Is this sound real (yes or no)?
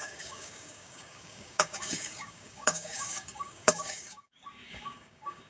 no